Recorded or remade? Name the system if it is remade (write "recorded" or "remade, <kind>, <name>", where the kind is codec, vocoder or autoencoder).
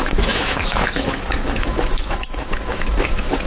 remade, autoencoder, DAC-VAE